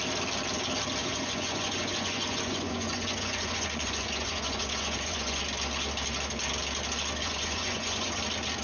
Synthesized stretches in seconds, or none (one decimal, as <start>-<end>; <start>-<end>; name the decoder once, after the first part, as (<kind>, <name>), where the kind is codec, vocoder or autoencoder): 1.0-5.4 (vocoder, Vocos); 7.2-8.2